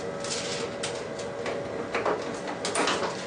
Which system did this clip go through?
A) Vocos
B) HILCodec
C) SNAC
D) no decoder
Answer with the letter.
D